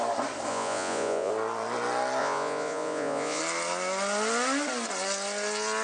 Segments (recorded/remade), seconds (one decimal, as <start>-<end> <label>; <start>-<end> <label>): 0.0-0.5 recorded; 0.5-1.3 remade; 1.3-2.2 recorded; 2.2-3.4 remade; 3.4-5.8 recorded